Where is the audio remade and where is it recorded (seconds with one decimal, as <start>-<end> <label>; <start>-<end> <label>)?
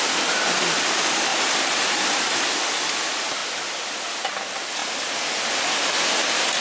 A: 0.0-1.3 recorded; 1.3-2.2 remade; 2.2-3.4 recorded; 3.4-4.1 remade; 4.1-6.6 recorded